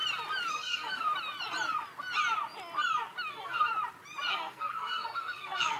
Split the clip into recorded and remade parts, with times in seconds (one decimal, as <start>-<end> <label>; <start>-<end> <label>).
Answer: 0.0-0.5 recorded; 0.5-1.1 remade; 1.1-3.3 recorded; 3.3-3.7 remade; 3.7-4.3 recorded; 4.3-5.8 remade

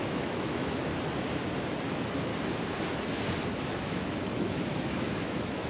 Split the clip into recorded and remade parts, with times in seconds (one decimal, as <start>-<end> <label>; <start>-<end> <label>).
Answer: 0.0-0.9 remade; 0.9-1.8 recorded; 1.8-2.3 remade; 2.3-3.9 recorded; 3.9-5.7 remade

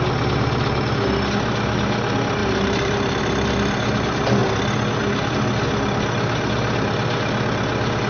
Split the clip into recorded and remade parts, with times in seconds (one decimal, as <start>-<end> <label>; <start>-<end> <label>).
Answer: 0.0-2.4 recorded; 2.4-3.2 remade; 3.2-8.1 recorded

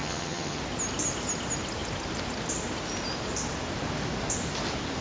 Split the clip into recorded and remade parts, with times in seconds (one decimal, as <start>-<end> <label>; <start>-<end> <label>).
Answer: 0.0-0.6 remade; 0.6-5.0 recorded

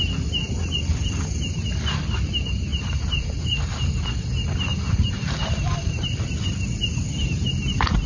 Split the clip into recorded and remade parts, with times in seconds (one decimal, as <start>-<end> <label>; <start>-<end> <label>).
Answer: 0.0-2.7 recorded; 2.7-4.0 remade; 4.0-4.7 recorded; 4.7-6.3 remade; 6.3-8.1 recorded

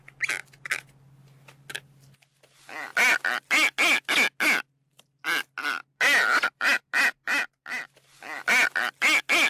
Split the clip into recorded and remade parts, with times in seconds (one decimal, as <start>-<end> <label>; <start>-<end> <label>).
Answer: 0.0-9.5 recorded